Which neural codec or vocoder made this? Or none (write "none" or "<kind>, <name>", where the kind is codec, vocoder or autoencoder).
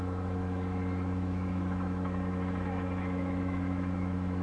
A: autoencoder, DAC-VAE